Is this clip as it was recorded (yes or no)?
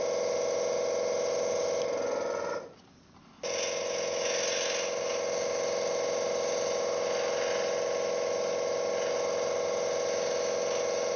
yes